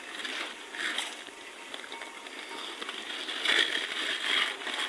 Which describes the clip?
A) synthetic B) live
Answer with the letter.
B